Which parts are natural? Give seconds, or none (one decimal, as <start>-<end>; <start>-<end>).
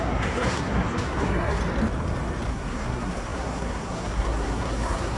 1.6-2.5